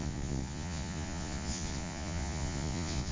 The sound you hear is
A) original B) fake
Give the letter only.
B